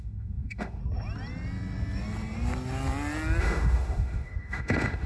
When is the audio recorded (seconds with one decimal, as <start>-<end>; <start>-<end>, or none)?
0.8-3.4

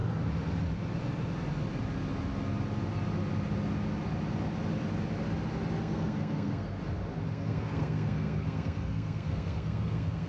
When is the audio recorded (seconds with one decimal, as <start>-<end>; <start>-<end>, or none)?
0.0-5.8; 6.8-7.3